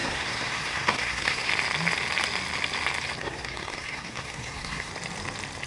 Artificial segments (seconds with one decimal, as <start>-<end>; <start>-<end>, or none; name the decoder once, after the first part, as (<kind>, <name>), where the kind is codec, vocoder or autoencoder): 0.0-1.5 (codec, SNAC); 3.2-4.9